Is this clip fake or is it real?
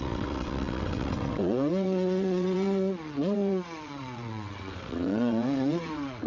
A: fake